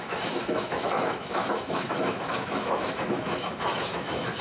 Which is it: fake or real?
fake